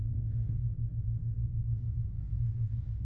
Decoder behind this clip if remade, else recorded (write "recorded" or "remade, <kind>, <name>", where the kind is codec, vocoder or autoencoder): remade, codec, SNAC